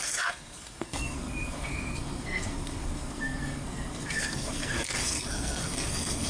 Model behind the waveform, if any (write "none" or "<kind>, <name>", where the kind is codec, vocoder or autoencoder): codec, SNAC